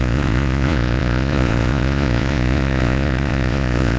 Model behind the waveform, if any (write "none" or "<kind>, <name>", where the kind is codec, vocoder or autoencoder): vocoder, Vocos